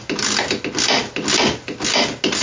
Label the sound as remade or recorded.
recorded